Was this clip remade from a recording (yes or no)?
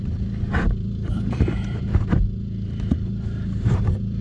yes